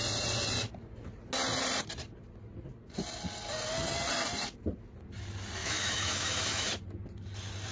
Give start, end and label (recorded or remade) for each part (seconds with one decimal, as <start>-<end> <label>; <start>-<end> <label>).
0.0-5.6 recorded; 5.6-6.7 remade; 6.7-7.7 recorded